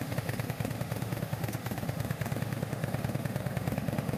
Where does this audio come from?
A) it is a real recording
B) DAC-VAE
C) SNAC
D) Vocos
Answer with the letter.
B